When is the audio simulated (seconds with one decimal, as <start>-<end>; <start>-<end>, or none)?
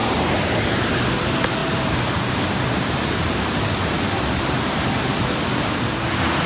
0.0-1.0; 1.6-4.0